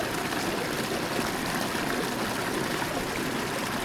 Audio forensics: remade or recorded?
recorded